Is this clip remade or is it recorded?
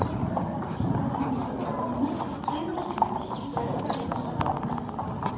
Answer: recorded